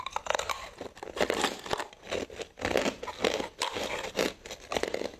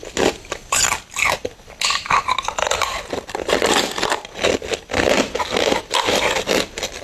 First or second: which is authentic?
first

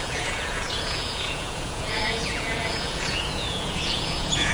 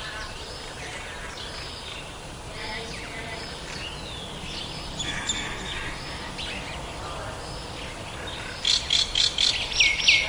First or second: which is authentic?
second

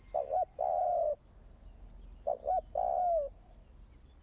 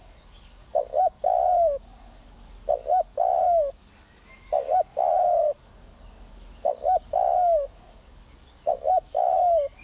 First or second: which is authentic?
first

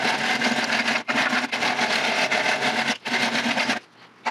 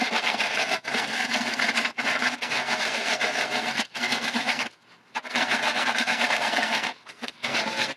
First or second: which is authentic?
first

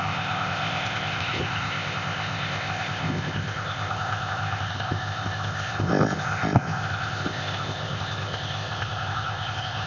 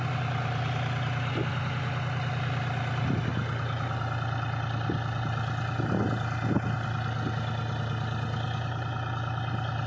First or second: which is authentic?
second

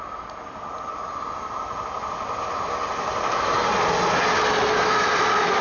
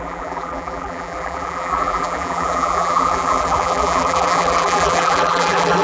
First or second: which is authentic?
first